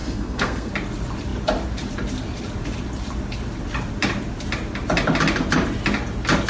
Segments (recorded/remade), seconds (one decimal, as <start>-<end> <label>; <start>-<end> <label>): 0.0-0.7 remade; 0.7-6.5 recorded

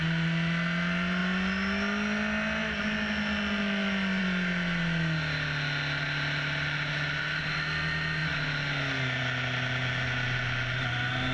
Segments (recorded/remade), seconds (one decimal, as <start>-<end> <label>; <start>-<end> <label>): 0.0-11.3 recorded

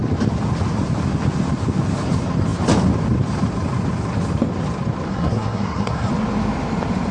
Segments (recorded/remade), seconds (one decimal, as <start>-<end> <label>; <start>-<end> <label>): 0.0-5.1 recorded; 5.1-6.1 remade; 6.1-7.1 recorded

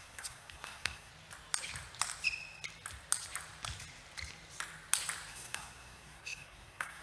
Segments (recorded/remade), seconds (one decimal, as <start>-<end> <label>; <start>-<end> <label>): 0.0-1.1 remade; 1.1-5.3 recorded; 5.3-7.0 remade

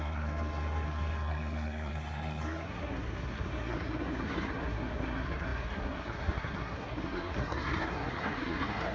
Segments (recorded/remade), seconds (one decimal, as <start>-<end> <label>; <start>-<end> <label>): 0.0-8.9 remade

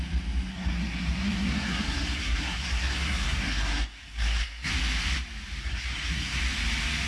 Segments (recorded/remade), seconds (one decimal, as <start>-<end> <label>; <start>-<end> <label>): 0.0-0.5 recorded; 0.5-4.7 remade; 4.7-5.6 recorded; 5.6-6.4 remade; 6.4-7.1 recorded

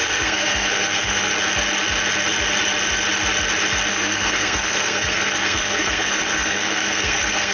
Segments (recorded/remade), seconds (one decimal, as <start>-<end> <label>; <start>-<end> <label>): 0.0-1.3 remade; 1.3-3.9 recorded; 3.9-7.5 remade